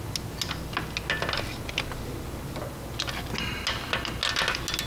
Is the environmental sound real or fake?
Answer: real